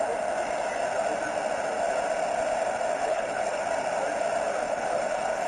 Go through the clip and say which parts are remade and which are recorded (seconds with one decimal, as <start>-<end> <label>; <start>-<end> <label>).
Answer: 0.0-3.0 recorded; 3.0-3.6 remade; 3.6-4.6 recorded; 4.6-5.5 remade